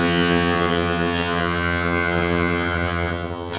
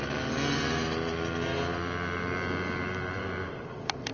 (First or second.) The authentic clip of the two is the second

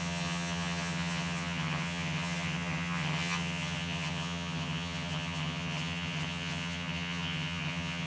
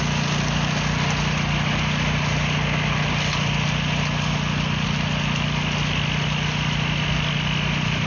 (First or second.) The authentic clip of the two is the second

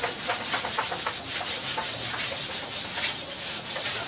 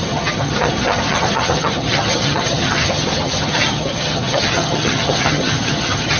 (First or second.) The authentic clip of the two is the first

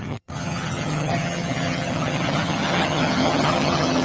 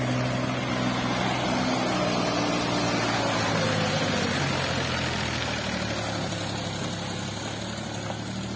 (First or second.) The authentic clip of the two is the second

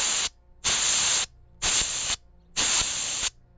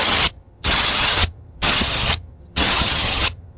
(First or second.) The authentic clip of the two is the first